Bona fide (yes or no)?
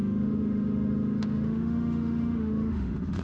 no